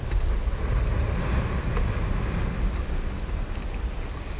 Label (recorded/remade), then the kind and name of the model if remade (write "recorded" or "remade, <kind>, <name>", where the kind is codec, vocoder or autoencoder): recorded